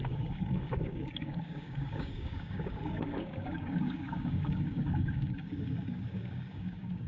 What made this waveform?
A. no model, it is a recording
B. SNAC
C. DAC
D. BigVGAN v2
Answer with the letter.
C